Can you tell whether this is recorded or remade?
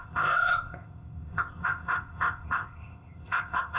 remade